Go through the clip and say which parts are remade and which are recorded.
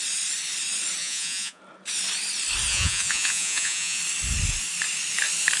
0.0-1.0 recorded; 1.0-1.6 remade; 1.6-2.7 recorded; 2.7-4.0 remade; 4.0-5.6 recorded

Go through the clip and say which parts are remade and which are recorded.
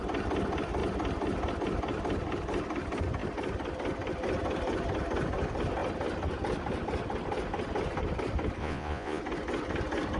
0.0-8.6 recorded; 8.6-9.2 remade; 9.2-10.2 recorded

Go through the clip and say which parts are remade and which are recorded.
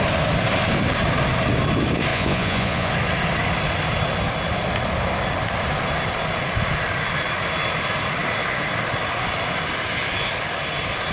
0.0-2.1 recorded; 2.1-2.9 remade; 2.9-11.1 recorded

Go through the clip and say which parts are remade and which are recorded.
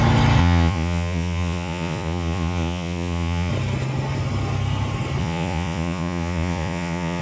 0.0-0.4 recorded; 0.4-3.5 remade; 3.5-5.2 recorded; 5.2-7.2 remade